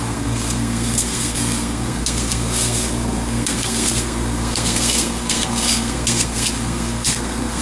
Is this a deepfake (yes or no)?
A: yes